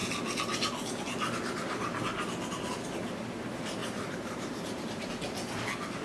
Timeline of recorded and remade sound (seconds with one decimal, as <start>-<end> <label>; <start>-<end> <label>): 0.0-3.8 recorded; 3.8-5.1 remade; 5.1-6.0 recorded